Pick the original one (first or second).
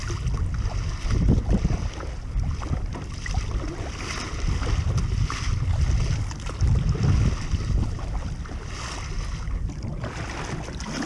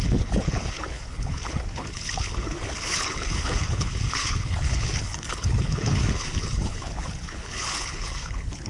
first